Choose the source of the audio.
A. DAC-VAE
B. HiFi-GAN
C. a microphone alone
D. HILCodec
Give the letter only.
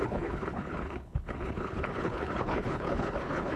D